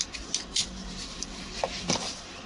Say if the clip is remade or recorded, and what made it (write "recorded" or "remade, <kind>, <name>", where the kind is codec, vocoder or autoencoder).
remade, vocoder, BigVGAN v2